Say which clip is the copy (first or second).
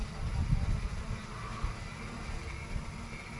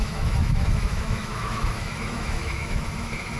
second